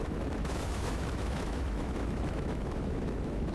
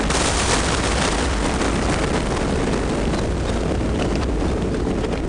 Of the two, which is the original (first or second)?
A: second